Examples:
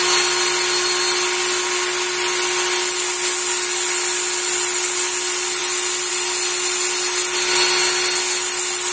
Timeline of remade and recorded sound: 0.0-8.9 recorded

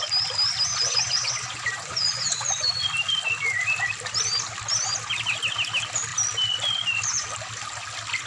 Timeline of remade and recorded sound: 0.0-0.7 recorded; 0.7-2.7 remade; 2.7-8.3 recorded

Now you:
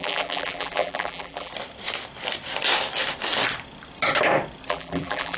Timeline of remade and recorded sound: 0.0-1.5 remade; 1.5-4.7 recorded; 4.7-5.4 remade